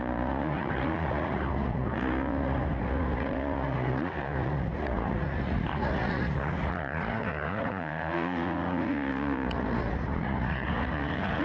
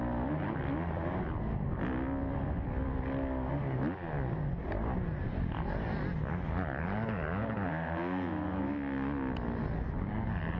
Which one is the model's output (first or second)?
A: first